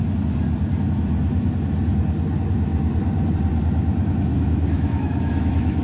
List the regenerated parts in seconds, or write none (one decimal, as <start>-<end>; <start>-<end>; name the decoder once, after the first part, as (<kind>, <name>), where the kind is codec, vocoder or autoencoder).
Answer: 4.3-5.8 (autoencoder, DAC-VAE)